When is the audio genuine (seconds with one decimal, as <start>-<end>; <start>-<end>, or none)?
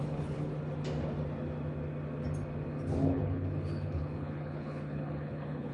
0.5-3.0